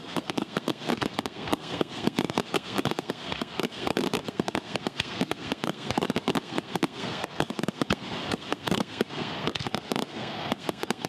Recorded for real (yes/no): no